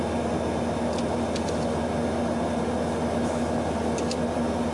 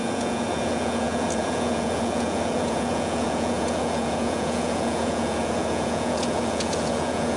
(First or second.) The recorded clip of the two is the first